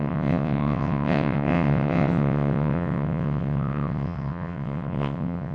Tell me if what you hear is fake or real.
fake